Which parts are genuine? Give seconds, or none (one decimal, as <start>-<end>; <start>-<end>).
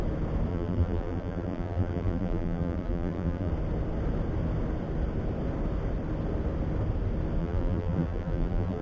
0.0-0.5; 3.5-7.4